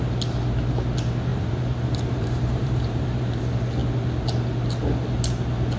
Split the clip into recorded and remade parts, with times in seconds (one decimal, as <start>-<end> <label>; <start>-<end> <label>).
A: 0.0-1.3 recorded; 1.3-3.4 remade; 3.4-5.8 recorded